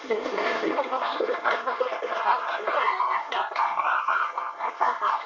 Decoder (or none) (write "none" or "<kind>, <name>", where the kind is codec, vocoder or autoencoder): codec, SNAC